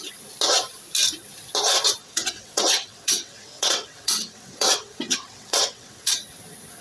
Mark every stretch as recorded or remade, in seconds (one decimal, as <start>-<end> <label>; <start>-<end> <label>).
0.0-2.0 recorded; 2.0-6.1 remade; 6.1-6.8 recorded